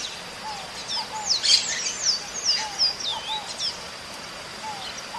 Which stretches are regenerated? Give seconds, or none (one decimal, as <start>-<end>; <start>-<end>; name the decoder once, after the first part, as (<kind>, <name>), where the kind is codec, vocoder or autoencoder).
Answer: none